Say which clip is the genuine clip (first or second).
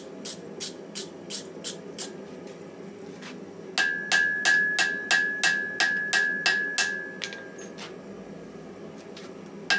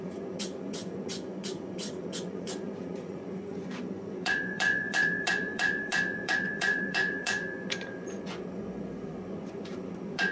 first